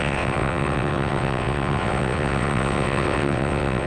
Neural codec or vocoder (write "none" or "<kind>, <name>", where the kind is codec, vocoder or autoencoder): vocoder, WaveNeXt